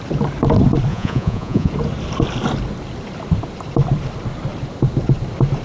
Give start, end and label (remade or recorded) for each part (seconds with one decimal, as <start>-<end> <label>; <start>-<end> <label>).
0.0-0.9 recorded; 0.9-1.7 remade; 1.7-5.6 recorded